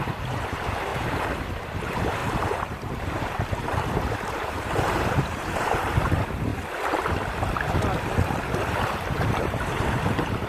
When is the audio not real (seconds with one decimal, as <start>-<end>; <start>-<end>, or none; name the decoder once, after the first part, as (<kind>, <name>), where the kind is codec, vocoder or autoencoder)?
0.0-6.5 (vocoder, BigVGAN v2); 9.0-10.5